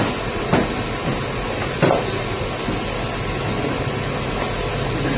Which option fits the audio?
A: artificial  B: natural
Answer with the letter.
B